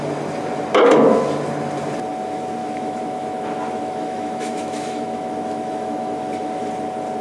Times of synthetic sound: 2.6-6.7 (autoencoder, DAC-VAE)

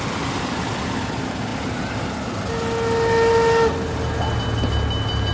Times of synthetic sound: none

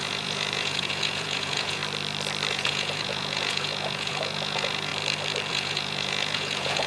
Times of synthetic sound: 0.0-1.8 (vocoder, Vocos); 2.5-4.9; 5.5-6.9